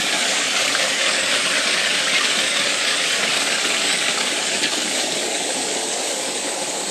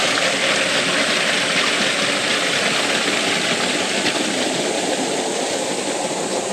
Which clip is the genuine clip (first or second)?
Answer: second